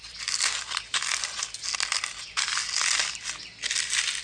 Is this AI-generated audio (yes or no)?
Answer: no